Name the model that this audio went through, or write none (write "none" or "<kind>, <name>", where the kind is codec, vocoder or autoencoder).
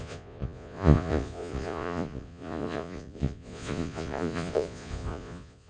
vocoder, Vocos